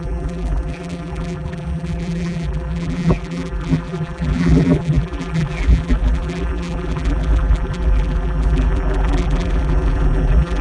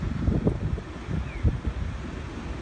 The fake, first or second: first